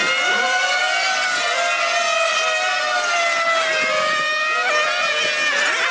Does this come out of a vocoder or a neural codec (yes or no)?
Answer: no